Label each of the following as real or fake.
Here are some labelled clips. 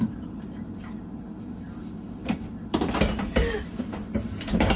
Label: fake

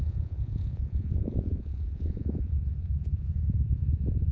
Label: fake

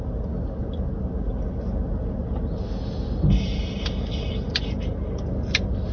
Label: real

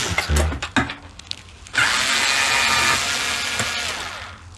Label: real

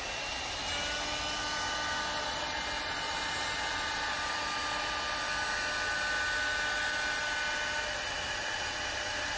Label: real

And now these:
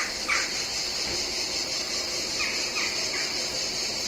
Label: real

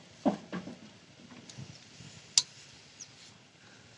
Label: real